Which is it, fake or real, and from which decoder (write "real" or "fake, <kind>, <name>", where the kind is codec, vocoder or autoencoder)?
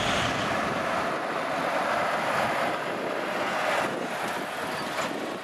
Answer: real